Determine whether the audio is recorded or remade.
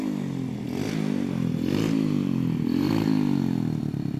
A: recorded